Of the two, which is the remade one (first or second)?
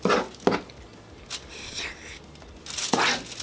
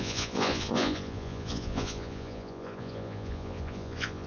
second